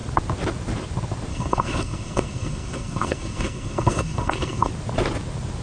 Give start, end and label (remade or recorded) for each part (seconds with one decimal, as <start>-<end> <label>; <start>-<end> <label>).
0.0-1.3 recorded; 1.3-4.7 remade; 4.7-5.6 recorded